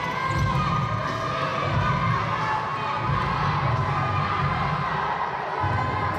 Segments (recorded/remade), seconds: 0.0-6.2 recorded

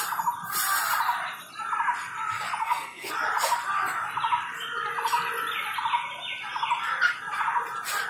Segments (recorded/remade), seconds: 0.0-2.6 recorded; 2.6-3.1 remade; 3.1-8.1 recorded

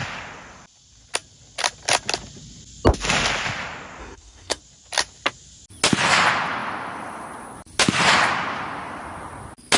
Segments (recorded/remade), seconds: 0.0-4.0 recorded; 4.0-4.6 remade; 4.6-9.8 recorded